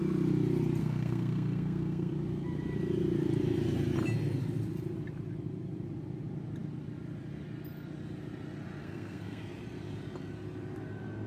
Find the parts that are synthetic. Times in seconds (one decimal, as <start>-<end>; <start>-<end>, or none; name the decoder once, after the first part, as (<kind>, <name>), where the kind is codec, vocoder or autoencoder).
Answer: 0.8-2.1 (codec, SNAC); 8.8-9.4